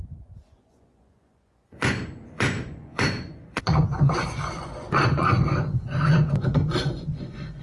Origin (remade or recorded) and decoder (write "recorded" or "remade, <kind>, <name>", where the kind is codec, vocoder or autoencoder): remade, vocoder, Vocos